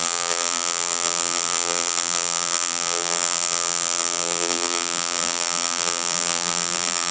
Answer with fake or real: fake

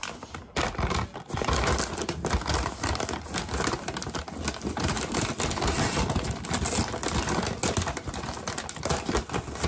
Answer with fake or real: real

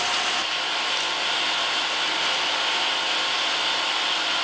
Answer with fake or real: real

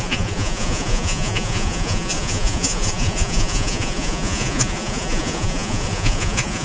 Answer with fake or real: fake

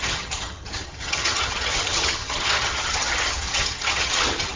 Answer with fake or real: fake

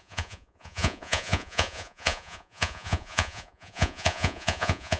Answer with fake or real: fake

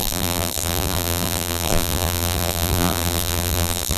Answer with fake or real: fake